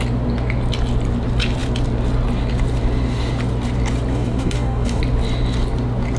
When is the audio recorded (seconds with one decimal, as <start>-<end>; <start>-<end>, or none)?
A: 0.0-4.1; 5.0-6.2

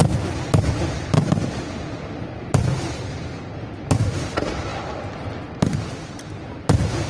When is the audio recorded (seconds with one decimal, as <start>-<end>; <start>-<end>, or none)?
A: 0.0-7.1

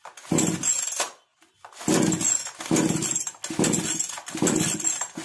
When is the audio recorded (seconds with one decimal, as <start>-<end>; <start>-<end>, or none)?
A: 0.0-5.2

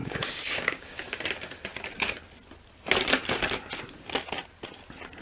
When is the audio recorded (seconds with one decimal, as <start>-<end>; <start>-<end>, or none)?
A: 1.2-5.2

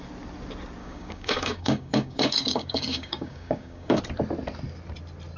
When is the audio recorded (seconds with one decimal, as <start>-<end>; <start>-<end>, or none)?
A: 0.0-0.8; 4.0-5.4

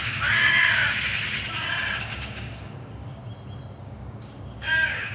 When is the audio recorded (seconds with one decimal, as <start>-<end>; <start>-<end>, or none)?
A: 0.8-2.0; 3.2-3.8